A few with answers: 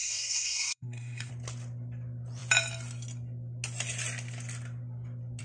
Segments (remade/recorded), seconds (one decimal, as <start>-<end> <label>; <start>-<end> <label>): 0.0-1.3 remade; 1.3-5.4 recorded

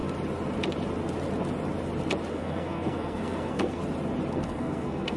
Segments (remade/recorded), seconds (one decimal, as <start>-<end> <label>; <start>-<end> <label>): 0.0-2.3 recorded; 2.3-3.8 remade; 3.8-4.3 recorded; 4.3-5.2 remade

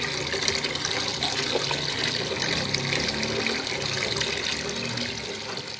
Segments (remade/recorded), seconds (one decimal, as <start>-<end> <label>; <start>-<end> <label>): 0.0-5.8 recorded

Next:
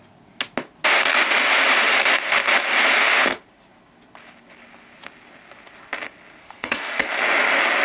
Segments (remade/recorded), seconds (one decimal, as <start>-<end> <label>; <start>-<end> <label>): 0.0-6.4 recorded; 6.4-7.0 remade; 7.0-7.8 recorded